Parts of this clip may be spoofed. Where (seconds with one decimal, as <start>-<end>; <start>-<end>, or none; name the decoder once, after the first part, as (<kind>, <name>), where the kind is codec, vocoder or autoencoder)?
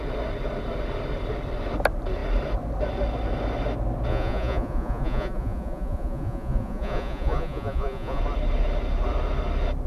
4.1-8.2 (vocoder, Vocos)